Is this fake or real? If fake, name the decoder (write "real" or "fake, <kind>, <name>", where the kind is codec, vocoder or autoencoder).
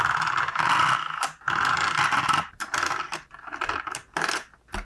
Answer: real